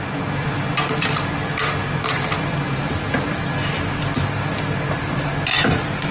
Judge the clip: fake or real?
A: real